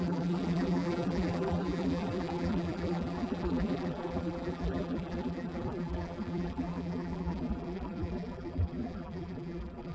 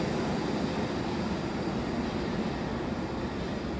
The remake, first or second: first